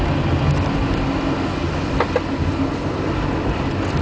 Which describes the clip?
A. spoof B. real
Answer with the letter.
B